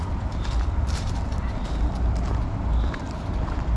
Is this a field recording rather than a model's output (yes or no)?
no